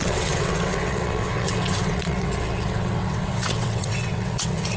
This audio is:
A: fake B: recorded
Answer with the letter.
A